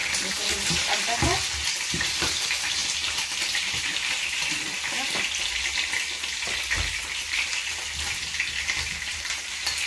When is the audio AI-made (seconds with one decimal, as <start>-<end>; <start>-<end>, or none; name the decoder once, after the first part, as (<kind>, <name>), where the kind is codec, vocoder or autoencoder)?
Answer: 2.0-2.8 (vocoder, BigVGAN v2); 3.5-3.9; 8.6-9.9